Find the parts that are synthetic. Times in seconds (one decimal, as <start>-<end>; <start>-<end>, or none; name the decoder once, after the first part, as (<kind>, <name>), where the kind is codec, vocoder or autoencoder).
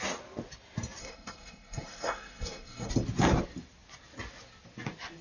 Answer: 1.0-2.9 (codec, SNAC)